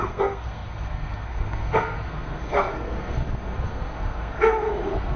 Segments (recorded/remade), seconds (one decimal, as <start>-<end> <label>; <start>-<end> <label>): 0.0-5.2 remade